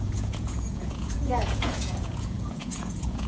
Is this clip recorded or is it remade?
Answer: remade